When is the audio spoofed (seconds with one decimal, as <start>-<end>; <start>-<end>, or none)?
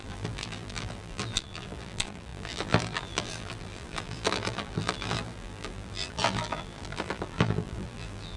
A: 0.0-8.4